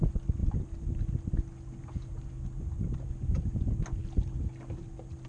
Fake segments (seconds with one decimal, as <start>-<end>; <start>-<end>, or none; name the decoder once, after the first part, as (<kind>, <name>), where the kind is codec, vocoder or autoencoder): none